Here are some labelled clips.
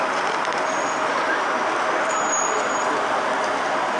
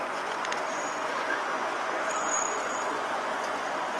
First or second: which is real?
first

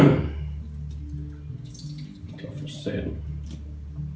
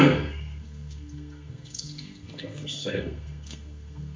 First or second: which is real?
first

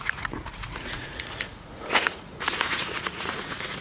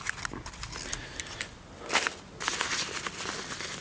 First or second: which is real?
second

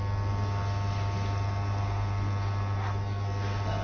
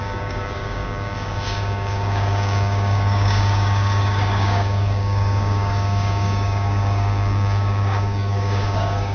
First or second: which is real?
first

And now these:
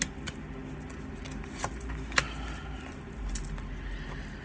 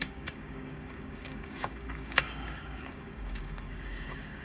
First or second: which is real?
first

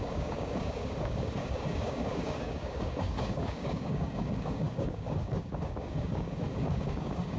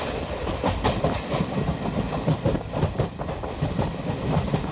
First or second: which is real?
second